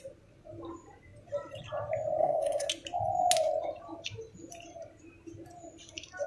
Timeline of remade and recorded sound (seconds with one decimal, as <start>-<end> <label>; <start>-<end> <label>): 0.0-2.2 recorded; 2.2-2.7 remade; 2.7-6.3 recorded